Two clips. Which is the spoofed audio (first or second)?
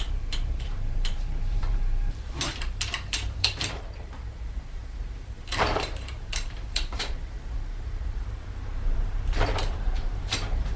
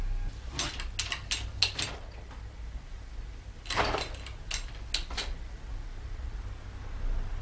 first